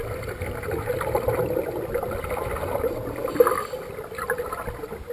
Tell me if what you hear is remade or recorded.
recorded